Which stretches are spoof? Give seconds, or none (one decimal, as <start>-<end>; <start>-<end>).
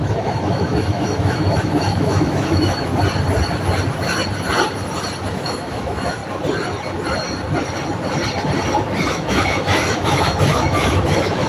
0.0-2.9; 5.3-6.2; 9.1-11.5